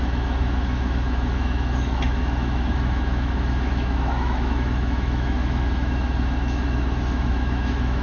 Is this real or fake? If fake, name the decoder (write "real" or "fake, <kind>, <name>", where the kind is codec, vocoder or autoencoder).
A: fake, autoencoder, DAC-VAE